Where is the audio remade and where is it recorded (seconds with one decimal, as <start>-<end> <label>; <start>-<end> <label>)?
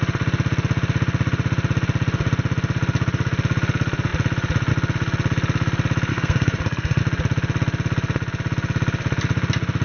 0.0-6.1 recorded; 6.1-7.0 remade; 7.0-9.8 recorded